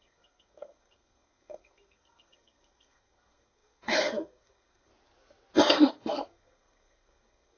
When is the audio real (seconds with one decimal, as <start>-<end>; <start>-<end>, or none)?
4.9-5.7